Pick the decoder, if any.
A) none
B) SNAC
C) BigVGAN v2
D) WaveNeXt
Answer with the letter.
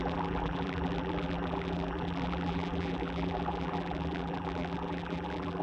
C